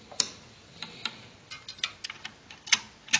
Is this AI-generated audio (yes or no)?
no